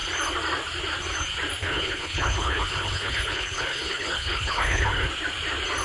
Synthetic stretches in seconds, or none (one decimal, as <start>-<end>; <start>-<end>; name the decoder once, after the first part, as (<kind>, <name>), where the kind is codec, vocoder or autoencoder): 1.6-5.1 (codec, HILCodec)